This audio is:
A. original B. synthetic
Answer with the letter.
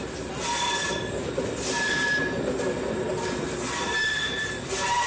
A